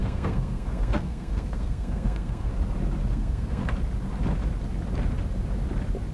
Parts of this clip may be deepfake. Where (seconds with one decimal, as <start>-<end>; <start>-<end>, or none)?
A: 0.0-2.5; 3.1-3.6